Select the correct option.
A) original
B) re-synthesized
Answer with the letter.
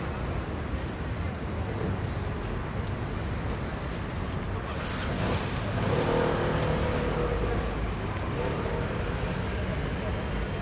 A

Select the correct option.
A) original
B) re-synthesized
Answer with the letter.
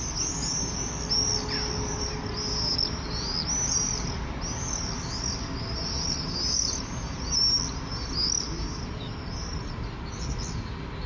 A